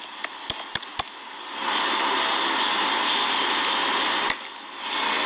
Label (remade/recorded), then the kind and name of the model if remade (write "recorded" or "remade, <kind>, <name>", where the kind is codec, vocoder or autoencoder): recorded